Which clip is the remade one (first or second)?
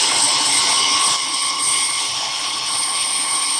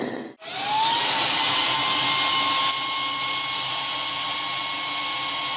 first